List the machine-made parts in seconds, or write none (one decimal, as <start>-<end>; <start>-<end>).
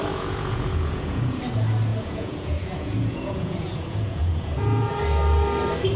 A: 0.0-1.4; 1.9-5.0